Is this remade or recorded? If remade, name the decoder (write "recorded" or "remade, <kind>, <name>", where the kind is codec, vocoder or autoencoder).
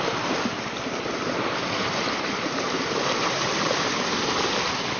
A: recorded